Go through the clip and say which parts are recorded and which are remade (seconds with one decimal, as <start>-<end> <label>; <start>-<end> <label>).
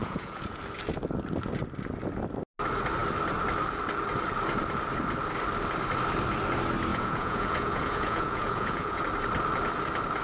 0.0-0.6 remade; 0.6-6.9 recorded; 6.9-9.0 remade; 9.0-10.2 recorded